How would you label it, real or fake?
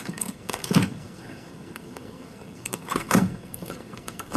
fake